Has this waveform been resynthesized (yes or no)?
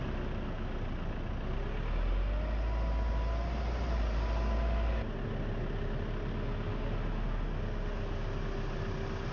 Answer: no